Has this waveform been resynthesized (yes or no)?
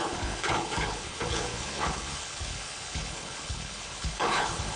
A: yes